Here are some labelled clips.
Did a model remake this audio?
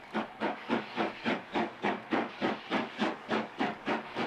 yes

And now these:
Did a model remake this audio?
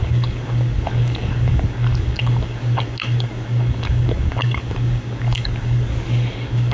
yes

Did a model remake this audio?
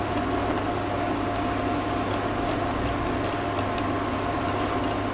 no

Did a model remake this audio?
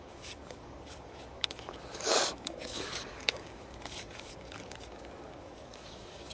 yes